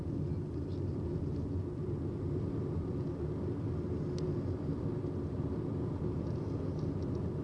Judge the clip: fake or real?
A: real